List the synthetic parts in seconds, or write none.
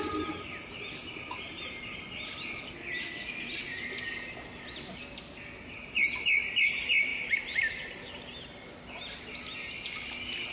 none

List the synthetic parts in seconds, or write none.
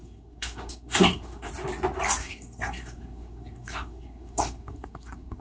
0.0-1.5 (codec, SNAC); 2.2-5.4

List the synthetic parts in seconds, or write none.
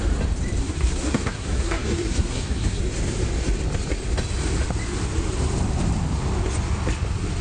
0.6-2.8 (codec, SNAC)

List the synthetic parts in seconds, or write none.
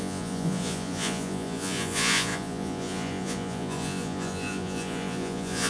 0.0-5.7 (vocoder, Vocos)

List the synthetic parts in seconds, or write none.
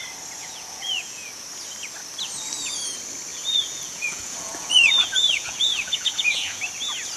0.4-1.3 (vocoder, Vocos); 3.3-6.6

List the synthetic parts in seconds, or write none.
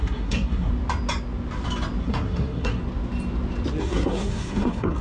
0.0-0.7 (codec, SNAC); 2.0-2.8; 3.8-5.0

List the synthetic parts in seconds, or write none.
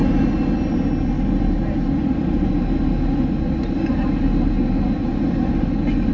none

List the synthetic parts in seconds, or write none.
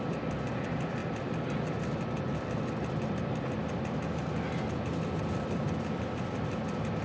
none